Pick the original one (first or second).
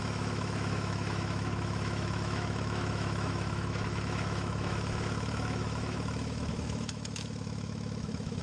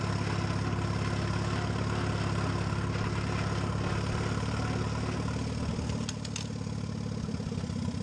second